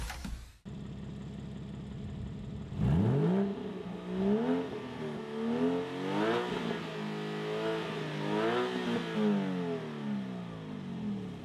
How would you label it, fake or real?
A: real